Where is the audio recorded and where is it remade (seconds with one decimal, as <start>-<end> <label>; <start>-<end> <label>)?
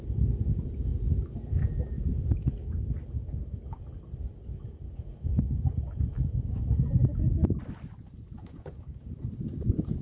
0.0-8.4 recorded; 8.4-9.1 remade; 9.1-10.0 recorded